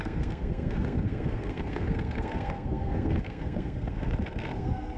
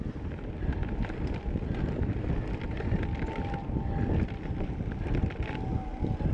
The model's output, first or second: first